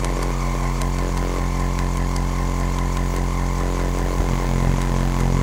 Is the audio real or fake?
real